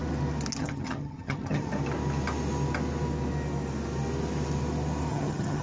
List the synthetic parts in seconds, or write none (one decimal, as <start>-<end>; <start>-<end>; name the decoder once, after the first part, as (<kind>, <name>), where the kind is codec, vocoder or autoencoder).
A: 0.6-1.7 (vocoder, HiFi-GAN); 5.1-5.6